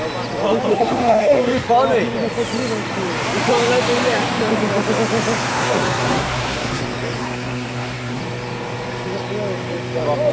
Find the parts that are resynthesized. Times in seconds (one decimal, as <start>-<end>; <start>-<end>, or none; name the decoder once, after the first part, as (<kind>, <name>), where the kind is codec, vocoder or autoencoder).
0.7-1.7 (codec, SNAC); 5.5-6.8; 7.2-8.2